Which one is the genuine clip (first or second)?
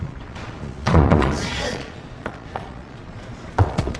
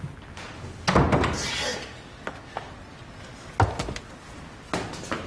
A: second